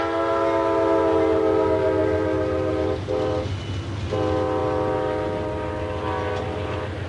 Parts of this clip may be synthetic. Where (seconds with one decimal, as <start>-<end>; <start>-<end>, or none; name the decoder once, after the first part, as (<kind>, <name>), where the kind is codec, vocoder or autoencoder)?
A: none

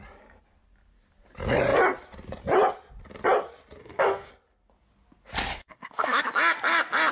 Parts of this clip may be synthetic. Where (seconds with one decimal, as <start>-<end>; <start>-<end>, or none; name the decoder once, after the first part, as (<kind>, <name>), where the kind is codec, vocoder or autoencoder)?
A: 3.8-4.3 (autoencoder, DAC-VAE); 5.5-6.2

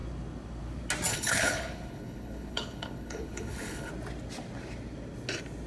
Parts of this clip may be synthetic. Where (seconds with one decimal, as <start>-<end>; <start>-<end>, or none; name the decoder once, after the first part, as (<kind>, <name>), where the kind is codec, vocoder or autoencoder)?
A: 1.1-3.9 (codec, HILCodec)

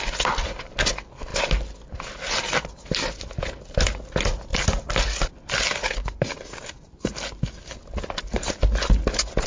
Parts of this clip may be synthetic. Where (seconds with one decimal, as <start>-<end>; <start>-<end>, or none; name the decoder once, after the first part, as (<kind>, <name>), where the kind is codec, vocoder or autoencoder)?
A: none